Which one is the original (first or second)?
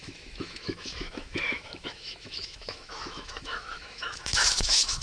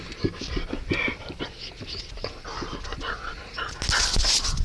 second